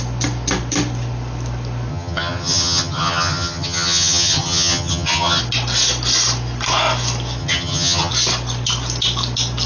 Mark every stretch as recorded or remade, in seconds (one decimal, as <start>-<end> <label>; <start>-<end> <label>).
0.0-1.9 recorded; 1.9-5.4 remade; 5.4-7.4 recorded; 7.4-8.1 remade; 8.1-9.7 recorded